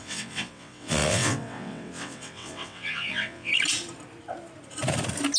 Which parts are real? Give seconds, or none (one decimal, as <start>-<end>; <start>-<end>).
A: 3.5-5.4